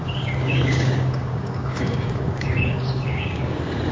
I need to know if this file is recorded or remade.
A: remade